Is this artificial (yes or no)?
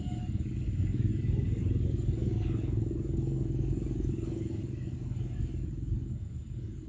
yes